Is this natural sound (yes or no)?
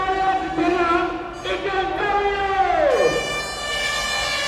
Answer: yes